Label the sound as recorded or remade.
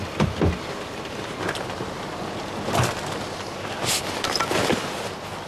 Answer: recorded